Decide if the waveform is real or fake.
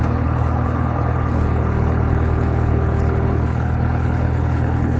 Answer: fake